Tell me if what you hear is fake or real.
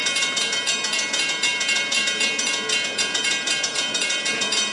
fake